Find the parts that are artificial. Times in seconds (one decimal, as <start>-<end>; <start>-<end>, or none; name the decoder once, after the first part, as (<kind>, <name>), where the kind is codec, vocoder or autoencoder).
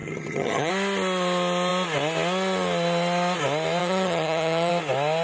0.0-0.7 (vocoder, HiFi-GAN); 3.8-4.7